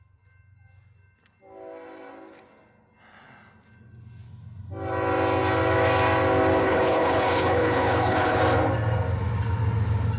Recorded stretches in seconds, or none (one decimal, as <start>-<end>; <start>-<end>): 0.0-6.6; 8.4-10.2